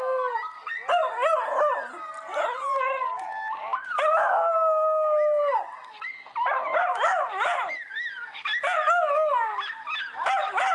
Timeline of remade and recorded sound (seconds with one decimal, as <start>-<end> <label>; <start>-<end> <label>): 0.0-10.7 recorded